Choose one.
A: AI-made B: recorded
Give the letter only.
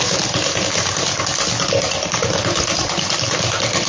B